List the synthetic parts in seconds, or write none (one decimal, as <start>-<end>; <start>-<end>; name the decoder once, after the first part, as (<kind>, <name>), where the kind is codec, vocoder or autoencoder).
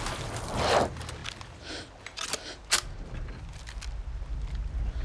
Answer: none